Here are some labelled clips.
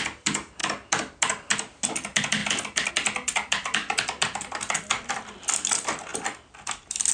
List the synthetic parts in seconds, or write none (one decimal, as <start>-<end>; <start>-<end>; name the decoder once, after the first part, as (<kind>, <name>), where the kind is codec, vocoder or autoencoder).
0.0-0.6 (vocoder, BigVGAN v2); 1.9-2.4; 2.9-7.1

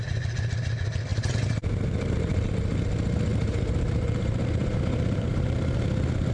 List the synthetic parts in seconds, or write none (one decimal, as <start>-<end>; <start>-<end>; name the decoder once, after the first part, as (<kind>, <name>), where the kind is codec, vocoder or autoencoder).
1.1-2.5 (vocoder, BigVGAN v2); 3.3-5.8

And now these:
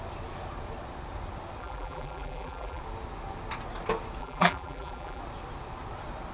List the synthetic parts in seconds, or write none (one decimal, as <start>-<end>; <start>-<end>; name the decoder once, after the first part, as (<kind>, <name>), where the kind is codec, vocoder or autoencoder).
1.6-2.8 (vocoder, BigVGAN v2); 4.2-5.2